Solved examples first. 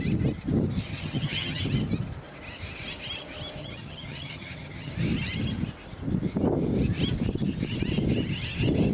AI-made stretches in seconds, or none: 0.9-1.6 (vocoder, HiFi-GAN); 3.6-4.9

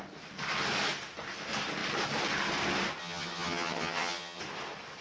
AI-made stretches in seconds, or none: 3.0-4.4 (vocoder, HiFi-GAN)

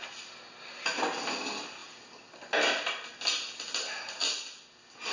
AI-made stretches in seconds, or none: none

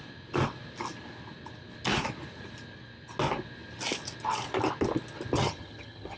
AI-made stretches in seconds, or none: 5.4-6.2 (vocoder, HiFi-GAN)

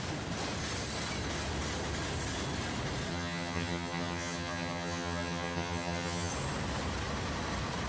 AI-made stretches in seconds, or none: 3.1-6.3 (vocoder, HiFi-GAN)

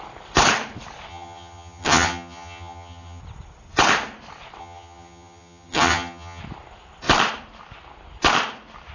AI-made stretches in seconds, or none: 1.1-3.2 (vocoder, HiFi-GAN); 4.6-6.4

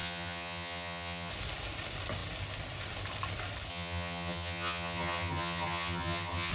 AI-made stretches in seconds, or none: 0.0-1.3 (vocoder, HiFi-GAN); 3.7-6.5

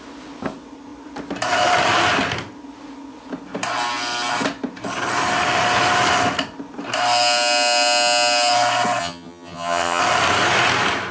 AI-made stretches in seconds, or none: 9.0-10.0 (vocoder, HiFi-GAN)